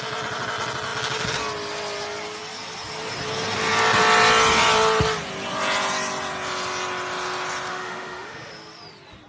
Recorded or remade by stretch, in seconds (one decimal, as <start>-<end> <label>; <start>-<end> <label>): 0.0-7.7 recorded; 7.7-8.5 remade; 8.5-9.3 recorded